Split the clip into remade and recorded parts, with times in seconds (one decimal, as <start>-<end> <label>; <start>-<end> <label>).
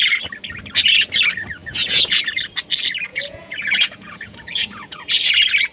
0.0-1.6 recorded; 1.6-2.2 remade; 2.2-3.1 recorded; 3.1-5.1 remade; 5.1-5.7 recorded